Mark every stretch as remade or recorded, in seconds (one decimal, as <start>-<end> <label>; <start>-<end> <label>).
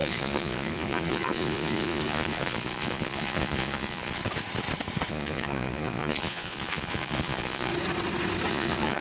0.0-4.2 remade; 4.2-5.1 recorded; 5.1-7.7 remade; 7.7-8.5 recorded; 8.5-9.0 remade